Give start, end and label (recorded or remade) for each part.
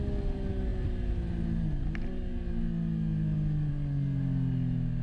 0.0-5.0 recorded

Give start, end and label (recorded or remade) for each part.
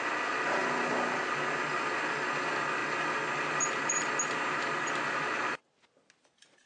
0.0-6.7 recorded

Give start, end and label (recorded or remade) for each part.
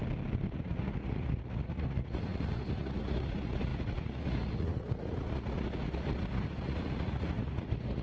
0.0-0.5 recorded; 0.5-8.0 remade